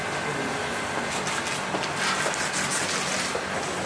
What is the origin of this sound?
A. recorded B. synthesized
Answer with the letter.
A